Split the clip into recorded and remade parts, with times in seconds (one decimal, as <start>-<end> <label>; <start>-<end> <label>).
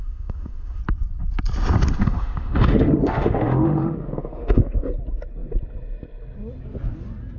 0.0-0.8 remade; 0.8-2.0 recorded; 2.0-4.9 remade; 4.9-7.4 recorded